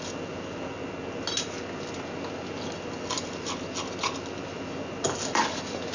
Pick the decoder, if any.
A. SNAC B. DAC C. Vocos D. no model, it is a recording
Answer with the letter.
D